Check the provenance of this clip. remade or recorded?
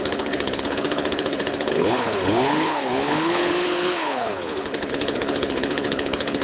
remade